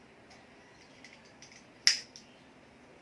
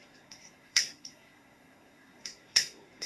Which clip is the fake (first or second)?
second